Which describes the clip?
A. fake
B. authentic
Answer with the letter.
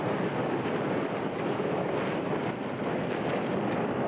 B